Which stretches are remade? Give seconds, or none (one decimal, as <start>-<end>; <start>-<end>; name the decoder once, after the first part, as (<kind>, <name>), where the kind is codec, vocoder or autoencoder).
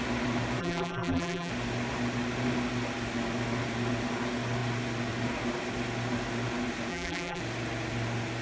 0.6-1.5 (vocoder, BigVGAN v2); 6.9-7.4